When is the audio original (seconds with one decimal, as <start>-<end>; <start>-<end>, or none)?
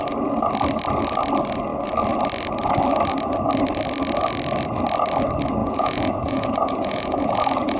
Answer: 0.0-5.6